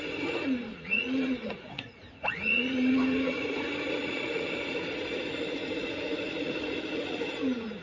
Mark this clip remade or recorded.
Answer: remade